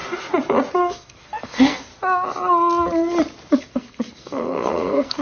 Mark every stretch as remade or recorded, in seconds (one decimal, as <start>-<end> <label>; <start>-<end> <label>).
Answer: 0.0-0.8 recorded; 0.8-1.9 remade; 1.9-3.6 recorded; 3.6-5.2 remade